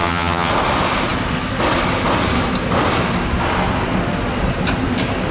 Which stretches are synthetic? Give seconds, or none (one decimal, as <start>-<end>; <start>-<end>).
0.0-0.5

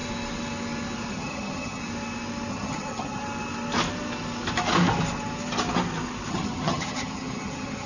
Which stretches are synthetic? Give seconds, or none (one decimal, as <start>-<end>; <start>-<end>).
1.1-1.8; 2.5-3.2; 6.3-7.9

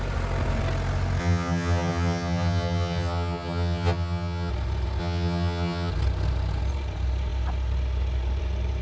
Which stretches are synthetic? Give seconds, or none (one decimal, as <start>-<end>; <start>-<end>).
1.2-4.5; 5.0-5.9

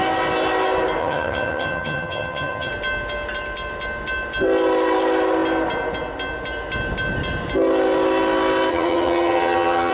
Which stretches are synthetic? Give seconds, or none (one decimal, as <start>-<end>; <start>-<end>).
1.0-2.7; 8.7-9.9

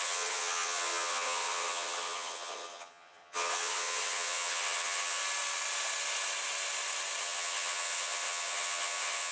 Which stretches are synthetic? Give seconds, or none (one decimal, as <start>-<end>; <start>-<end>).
0.0-5.2; 7.2-9.3